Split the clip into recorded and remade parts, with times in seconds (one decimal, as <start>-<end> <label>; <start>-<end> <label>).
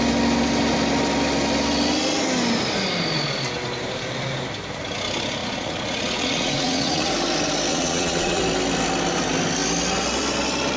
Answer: 0.0-5.4 recorded; 5.4-7.1 remade; 7.1-7.7 recorded; 7.7-8.4 remade; 8.4-10.8 recorded